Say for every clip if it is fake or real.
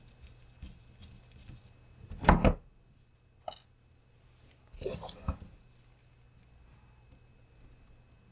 real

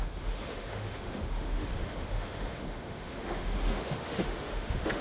fake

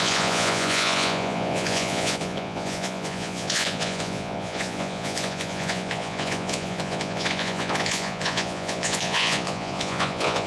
fake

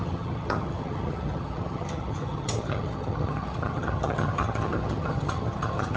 fake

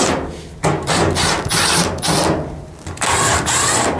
real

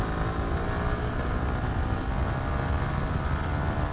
real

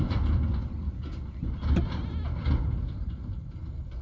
real